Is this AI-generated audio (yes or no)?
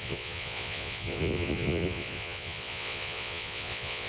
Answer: yes